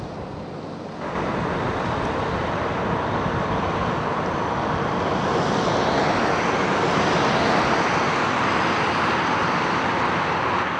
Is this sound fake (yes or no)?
no